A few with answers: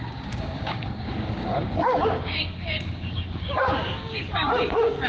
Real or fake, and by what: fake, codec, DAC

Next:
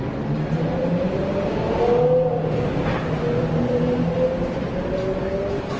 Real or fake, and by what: real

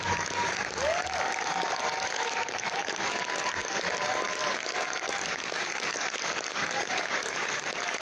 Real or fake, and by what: fake, codec, DAC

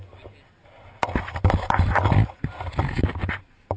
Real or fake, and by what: real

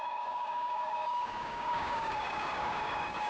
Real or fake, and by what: fake, codec, DAC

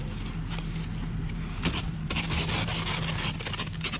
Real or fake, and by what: real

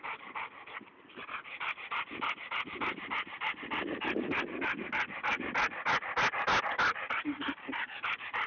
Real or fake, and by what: real